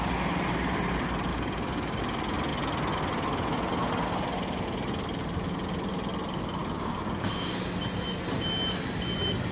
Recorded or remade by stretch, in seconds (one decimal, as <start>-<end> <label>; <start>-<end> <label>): 0.0-1.3 recorded; 1.3-2.0 remade; 2.0-6.6 recorded; 6.6-7.6 remade; 7.6-9.5 recorded